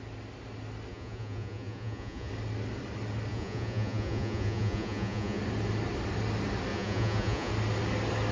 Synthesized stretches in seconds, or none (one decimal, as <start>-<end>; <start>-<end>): 0.9-2.3; 3.3-5.4; 6.7-7.5